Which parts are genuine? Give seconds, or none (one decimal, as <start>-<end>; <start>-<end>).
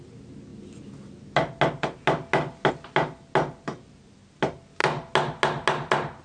0.0-6.2